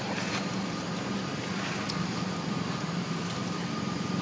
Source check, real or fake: fake